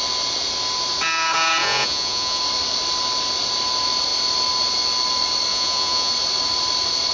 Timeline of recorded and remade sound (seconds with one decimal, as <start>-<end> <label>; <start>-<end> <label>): 0.0-1.6 recorded; 1.6-2.4 remade; 2.4-5.5 recorded; 5.5-6.1 remade; 6.1-7.1 recorded